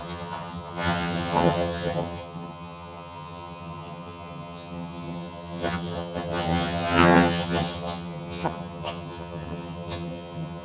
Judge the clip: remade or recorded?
remade